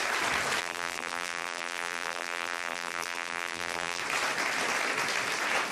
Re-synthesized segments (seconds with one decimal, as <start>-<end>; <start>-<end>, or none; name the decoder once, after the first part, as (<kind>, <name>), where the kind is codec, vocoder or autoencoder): 0.6-4.0 (vocoder, BigVGAN v2)